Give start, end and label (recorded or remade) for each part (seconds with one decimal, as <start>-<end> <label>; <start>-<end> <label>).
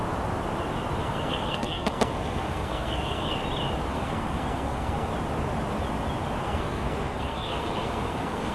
0.0-1.0 recorded; 1.0-3.4 remade; 3.4-3.9 recorded; 3.9-5.1 remade; 5.1-6.4 recorded; 6.4-8.5 remade